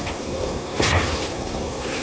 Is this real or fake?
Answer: fake